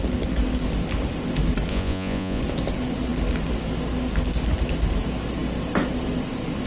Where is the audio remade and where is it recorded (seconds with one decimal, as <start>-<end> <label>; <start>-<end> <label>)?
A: 0.0-1.7 recorded; 1.7-2.4 remade; 2.4-6.7 recorded

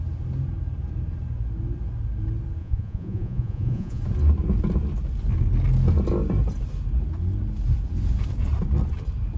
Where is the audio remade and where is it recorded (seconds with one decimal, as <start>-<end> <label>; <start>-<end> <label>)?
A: 0.0-2.6 recorded; 2.6-4.0 remade; 4.0-9.4 recorded

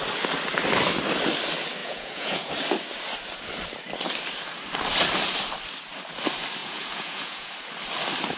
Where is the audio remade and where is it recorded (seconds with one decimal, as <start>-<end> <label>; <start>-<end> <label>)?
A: 0.0-1.8 recorded; 1.8-2.5 remade; 2.5-6.6 recorded; 6.6-7.5 remade; 7.5-8.4 recorded